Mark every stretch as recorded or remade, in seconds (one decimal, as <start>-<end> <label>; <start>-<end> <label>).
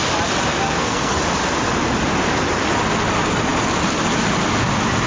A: 0.0-0.5 recorded; 0.5-1.2 remade; 1.2-5.1 recorded